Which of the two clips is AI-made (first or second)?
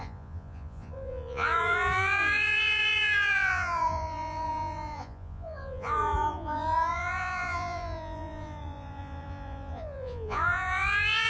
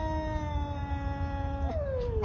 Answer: first